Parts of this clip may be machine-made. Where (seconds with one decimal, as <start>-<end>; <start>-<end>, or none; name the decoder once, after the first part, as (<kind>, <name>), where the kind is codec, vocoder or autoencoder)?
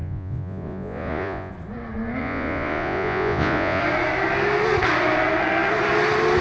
0.0-1.5 (vocoder, Vocos); 2.2-3.8